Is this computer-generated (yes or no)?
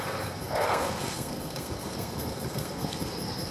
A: yes